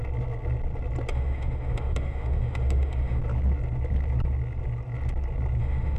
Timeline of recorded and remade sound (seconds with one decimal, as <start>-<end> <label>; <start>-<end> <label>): 0.0-1.1 recorded; 1.1-3.2 remade; 3.2-5.6 recorded; 5.6-6.0 remade